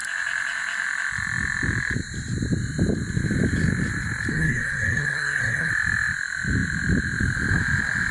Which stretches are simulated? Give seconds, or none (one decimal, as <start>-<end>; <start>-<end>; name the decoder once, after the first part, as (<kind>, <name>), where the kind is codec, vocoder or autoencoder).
4.3-5.7 (codec, SNAC)